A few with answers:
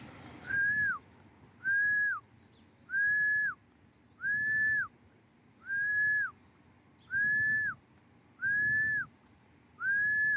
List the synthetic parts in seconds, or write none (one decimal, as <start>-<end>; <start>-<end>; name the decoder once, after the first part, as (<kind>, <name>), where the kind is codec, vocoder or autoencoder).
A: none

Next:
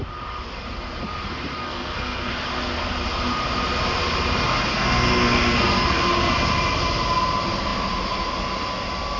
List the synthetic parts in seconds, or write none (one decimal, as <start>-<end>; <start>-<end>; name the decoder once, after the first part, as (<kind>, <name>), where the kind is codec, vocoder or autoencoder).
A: 1.6-2.3 (codec, SNAC); 4.7-6.0

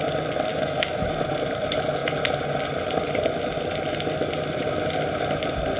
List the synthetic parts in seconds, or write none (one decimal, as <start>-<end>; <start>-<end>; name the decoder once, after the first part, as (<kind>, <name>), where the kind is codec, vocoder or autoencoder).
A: 0.5-1.1 (autoencoder, DAC-VAE)

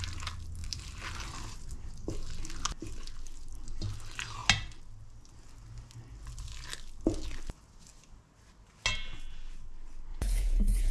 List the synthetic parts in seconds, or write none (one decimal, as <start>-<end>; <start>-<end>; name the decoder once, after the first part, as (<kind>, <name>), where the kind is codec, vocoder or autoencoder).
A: 10.1-10.9 (vocoder, Vocos)